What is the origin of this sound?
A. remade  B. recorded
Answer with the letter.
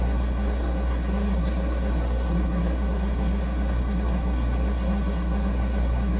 A